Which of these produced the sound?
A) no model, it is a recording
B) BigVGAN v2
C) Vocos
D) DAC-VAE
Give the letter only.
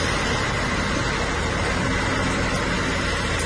A